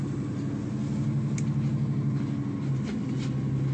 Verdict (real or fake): real